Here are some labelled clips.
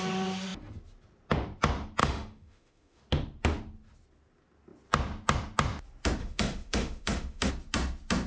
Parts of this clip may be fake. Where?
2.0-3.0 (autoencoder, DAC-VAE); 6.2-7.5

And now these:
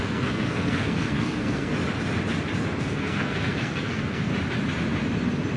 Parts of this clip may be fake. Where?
0.0-1.7 (codec, SNAC); 2.8-4.3

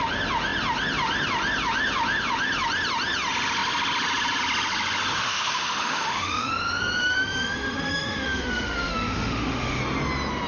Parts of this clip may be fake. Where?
5.1-6.5 (autoencoder, DAC-VAE); 7.0-9.8

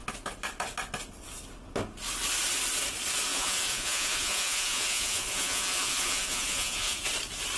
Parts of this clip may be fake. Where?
3.3-7.1 (vocoder, Vocos)

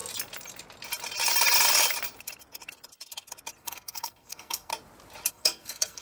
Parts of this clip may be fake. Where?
3.6-4.7 (codec, SNAC); 5.3-6.0

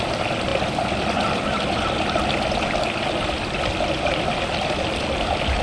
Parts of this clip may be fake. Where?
none

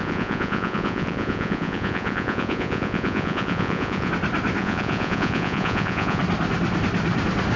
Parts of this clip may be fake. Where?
0.0-4.1 (vocoder, Vocos); 4.6-6.2